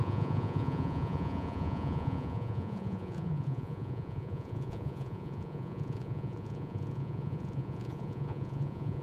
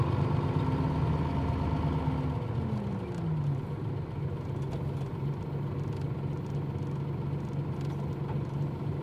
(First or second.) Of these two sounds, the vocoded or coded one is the first